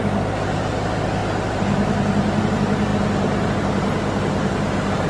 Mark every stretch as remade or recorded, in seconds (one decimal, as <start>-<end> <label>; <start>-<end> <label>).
0.0-5.1 recorded